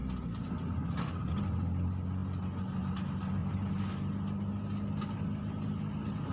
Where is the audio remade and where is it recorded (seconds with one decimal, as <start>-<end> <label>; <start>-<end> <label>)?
0.0-3.4 recorded; 3.4-3.9 remade; 3.9-6.3 recorded